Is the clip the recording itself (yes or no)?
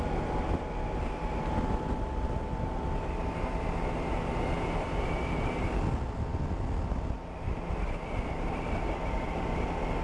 yes